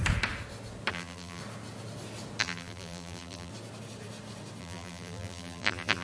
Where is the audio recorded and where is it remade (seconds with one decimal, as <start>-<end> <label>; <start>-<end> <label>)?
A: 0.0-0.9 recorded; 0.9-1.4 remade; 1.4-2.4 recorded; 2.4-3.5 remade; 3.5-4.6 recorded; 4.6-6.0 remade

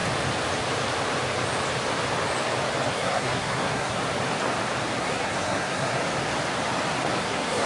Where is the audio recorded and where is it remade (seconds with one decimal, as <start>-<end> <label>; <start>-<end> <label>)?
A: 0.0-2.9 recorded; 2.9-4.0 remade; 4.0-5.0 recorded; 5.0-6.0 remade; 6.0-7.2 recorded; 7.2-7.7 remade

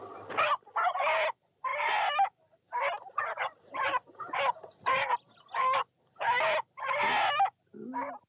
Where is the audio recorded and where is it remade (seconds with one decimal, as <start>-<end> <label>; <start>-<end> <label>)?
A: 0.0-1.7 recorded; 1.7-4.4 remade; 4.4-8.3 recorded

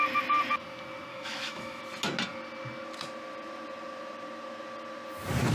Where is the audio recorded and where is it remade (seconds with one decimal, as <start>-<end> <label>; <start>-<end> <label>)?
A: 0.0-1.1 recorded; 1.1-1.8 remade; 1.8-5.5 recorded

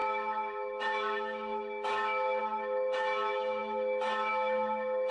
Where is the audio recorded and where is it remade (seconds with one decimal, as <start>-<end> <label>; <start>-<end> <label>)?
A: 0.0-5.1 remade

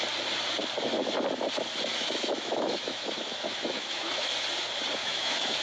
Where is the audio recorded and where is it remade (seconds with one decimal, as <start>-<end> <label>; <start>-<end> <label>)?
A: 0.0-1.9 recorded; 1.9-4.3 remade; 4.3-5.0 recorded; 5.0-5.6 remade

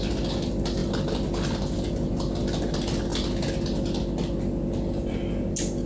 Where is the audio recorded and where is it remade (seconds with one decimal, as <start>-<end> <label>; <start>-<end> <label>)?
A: 0.0-5.9 recorded

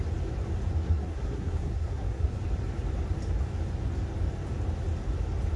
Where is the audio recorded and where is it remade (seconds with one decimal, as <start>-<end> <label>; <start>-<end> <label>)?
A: 0.0-0.8 recorded; 0.8-2.4 remade; 2.4-5.6 recorded